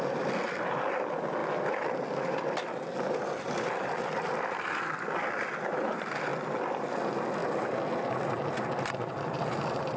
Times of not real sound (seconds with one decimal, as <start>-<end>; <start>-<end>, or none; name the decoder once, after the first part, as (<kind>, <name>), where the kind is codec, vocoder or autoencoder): 0.0-1.4 (vocoder, BigVGAN v2); 3.2-6.3; 6.8-7.4; 8.9-10.0